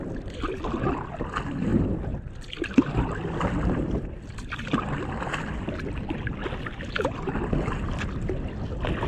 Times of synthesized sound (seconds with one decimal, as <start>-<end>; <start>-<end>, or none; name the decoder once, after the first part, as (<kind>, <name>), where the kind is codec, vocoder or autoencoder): none